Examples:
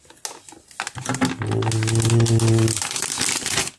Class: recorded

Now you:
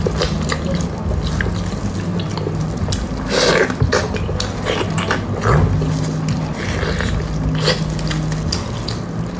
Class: recorded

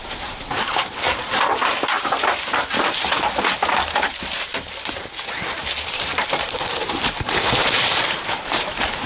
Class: remade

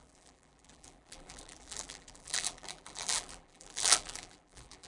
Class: remade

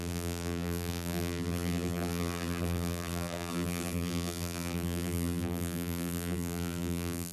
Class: remade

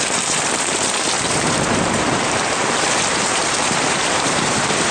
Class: remade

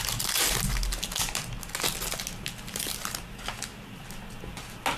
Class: recorded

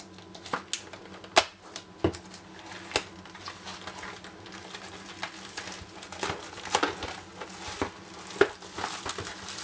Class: recorded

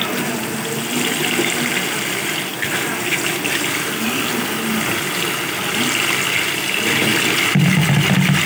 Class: recorded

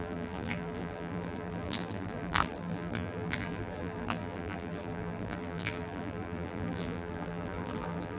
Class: remade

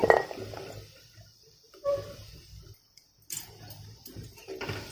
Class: remade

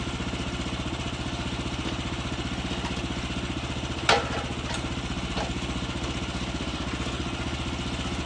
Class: recorded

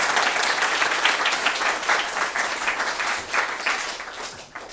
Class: recorded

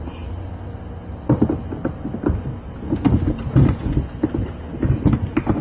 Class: recorded